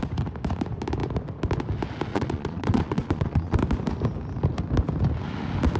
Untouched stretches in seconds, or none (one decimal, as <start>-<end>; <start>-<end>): 0.0-2.1; 3.6-5.8